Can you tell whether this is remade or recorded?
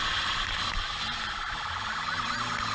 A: recorded